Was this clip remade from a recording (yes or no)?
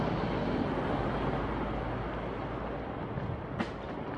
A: no